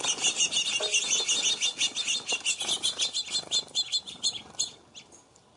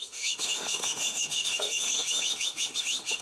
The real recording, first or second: first